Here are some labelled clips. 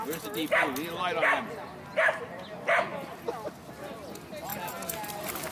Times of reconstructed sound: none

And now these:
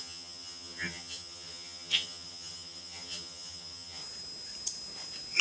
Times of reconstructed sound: 0.0-4.0 (vocoder, HiFi-GAN)

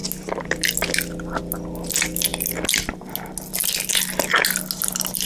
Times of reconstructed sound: none

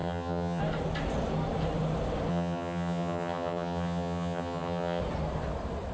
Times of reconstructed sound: 0.0-0.6 (vocoder, HiFi-GAN); 2.3-5.0

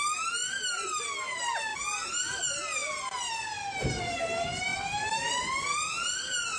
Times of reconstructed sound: none